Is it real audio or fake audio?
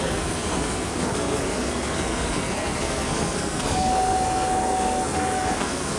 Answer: fake